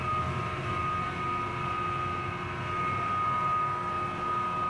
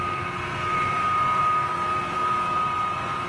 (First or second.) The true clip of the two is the first